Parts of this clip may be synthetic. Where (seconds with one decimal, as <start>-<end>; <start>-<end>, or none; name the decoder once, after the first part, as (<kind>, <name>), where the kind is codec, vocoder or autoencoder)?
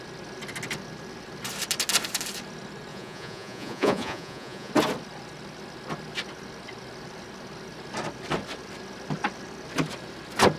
2.9-4.7 (vocoder, Vocos)